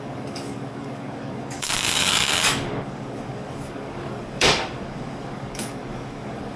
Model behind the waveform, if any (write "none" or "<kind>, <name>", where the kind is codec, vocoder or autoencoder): codec, DAC